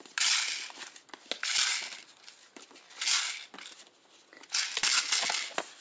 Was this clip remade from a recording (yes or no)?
no